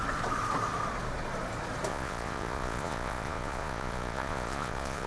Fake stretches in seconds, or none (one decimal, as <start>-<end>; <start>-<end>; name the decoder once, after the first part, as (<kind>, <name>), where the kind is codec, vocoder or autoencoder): 1.9-5.1 (vocoder, Vocos)